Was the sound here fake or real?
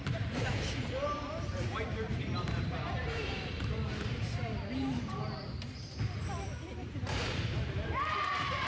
fake